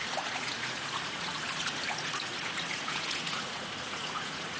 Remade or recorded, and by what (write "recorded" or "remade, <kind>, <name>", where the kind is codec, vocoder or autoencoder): remade, vocoder, Vocos